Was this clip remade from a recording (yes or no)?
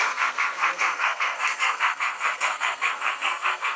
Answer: yes